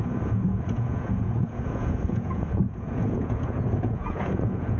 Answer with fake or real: fake